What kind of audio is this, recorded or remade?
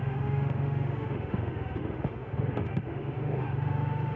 remade